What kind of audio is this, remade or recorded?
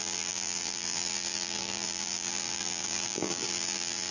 remade